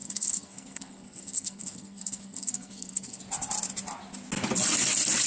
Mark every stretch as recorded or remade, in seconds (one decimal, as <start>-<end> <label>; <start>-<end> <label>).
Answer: 0.0-3.2 remade; 3.2-5.3 recorded

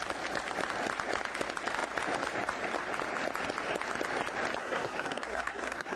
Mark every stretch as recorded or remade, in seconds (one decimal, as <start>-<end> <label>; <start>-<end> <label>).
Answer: 0.0-4.6 recorded; 4.6-6.0 remade

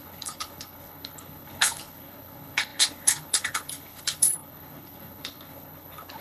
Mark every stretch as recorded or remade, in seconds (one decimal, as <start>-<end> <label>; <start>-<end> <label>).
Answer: 0.0-6.2 remade

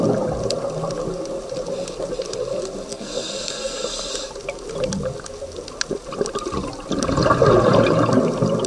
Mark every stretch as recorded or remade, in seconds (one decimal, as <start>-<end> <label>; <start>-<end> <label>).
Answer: 0.0-2.9 recorded; 2.9-4.1 remade; 4.1-8.7 recorded

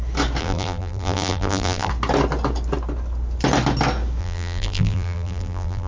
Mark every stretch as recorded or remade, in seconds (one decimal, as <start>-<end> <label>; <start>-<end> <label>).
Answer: 0.0-0.4 recorded; 0.4-1.9 remade; 1.9-4.2 recorded; 4.2-5.9 remade

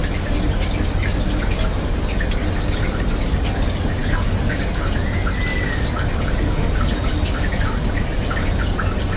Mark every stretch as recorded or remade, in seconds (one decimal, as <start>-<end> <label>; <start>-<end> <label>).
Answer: 0.0-9.2 recorded

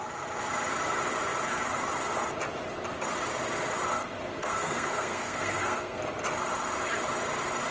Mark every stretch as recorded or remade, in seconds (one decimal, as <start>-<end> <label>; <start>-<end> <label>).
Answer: 0.0-4.4 recorded; 4.4-6.0 remade; 6.0-7.7 recorded

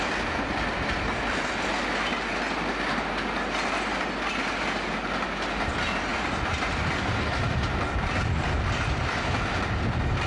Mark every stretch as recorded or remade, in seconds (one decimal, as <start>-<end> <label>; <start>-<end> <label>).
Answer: 0.0-6.1 recorded; 6.1-7.3 remade; 7.3-10.3 recorded